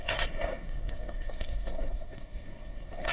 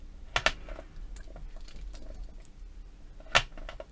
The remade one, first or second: first